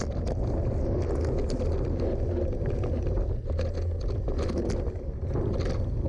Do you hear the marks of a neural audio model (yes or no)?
no